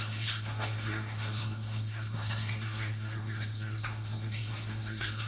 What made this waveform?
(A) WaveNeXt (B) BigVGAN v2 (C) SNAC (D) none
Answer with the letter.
C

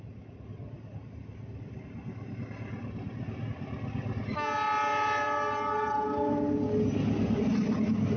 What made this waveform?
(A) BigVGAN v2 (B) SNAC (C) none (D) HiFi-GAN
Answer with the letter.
C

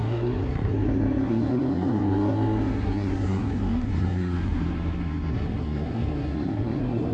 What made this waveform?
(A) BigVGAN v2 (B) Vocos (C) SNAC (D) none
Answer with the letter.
C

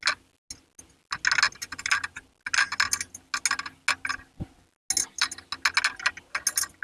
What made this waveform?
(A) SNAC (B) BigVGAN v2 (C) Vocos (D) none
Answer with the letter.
D